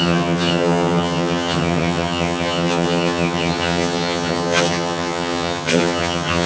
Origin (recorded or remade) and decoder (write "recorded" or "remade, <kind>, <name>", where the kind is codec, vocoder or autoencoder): remade, vocoder, HiFi-GAN